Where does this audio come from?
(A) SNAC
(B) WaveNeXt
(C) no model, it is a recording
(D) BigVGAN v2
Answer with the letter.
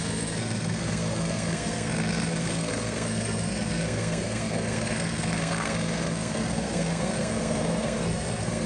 A